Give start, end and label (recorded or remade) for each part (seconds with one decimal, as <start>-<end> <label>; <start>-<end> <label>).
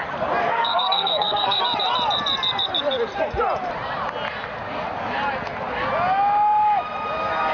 0.0-0.4 recorded; 0.4-1.6 remade; 1.6-7.5 recorded